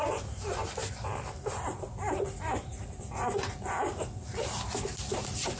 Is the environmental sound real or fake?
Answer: real